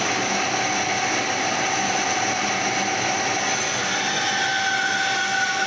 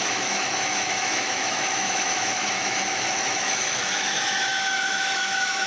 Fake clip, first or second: second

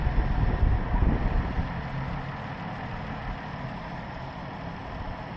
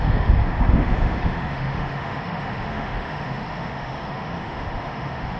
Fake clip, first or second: second